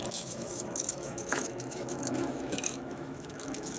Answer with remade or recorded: remade